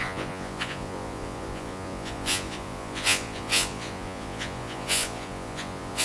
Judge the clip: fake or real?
fake